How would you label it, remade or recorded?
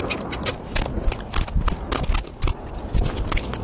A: recorded